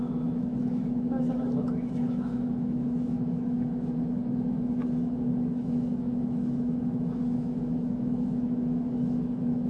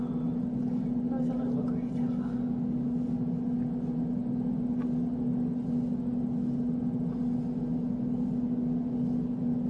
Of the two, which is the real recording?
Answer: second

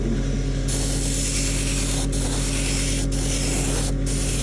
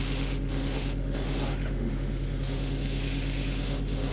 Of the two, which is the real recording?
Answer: first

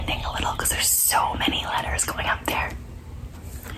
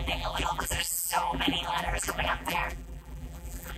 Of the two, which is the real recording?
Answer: first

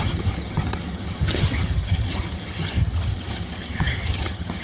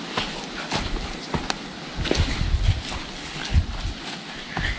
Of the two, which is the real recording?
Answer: second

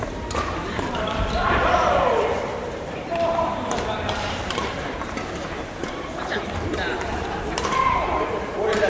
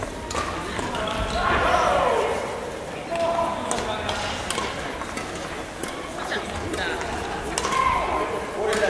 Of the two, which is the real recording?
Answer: second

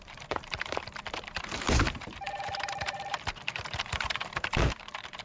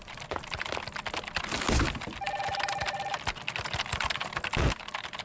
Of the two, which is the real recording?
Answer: second